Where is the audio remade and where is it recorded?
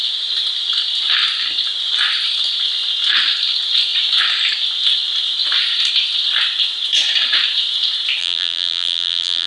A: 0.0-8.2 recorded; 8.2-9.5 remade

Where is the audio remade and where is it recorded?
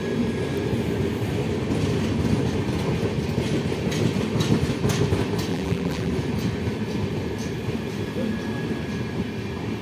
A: 0.0-5.5 recorded; 5.5-6.1 remade; 6.1-9.8 recorded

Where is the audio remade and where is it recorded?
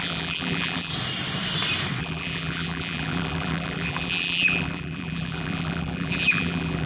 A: 0.0-0.9 remade; 0.9-2.0 recorded; 2.0-6.9 remade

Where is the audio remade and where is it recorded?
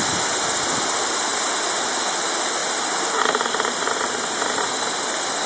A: 0.0-2.6 recorded; 2.6-4.4 remade; 4.4-5.5 recorded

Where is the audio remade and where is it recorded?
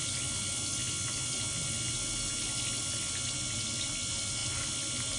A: 0.0-5.2 recorded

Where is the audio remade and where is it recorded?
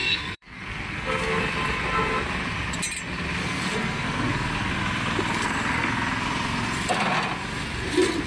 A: 0.0-1.4 remade; 1.4-3.4 recorded; 3.4-4.7 remade; 4.7-5.3 recorded; 5.3-5.9 remade; 5.9-8.3 recorded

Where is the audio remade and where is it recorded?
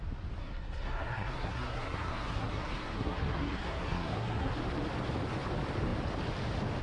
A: 0.0-0.4 recorded; 0.4-4.5 remade; 4.5-6.8 recorded